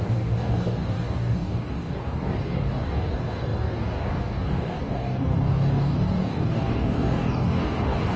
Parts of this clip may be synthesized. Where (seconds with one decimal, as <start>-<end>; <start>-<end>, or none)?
0.0-8.2